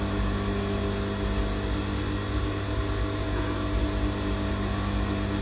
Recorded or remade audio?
recorded